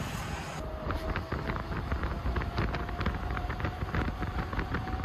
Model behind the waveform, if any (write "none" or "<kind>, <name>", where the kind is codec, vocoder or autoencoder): none